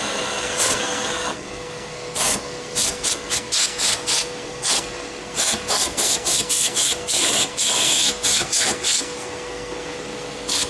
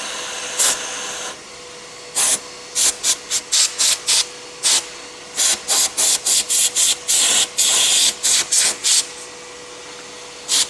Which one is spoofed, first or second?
first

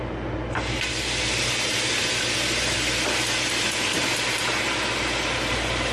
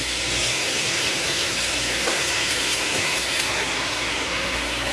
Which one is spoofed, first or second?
second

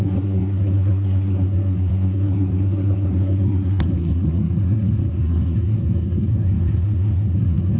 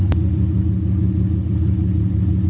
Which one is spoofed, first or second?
first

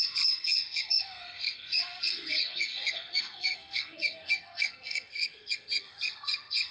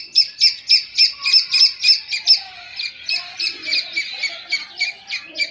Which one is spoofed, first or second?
first